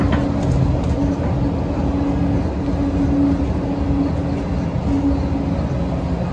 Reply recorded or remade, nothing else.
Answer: recorded